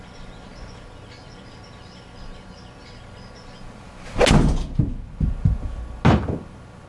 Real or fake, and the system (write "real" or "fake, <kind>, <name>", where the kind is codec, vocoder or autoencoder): real